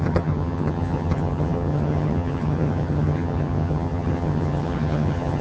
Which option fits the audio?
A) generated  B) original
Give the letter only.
A